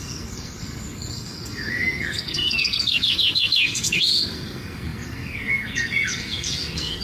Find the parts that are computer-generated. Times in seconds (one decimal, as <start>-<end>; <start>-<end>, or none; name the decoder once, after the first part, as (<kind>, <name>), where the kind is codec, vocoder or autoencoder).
0.0-7.0 (codec, SNAC)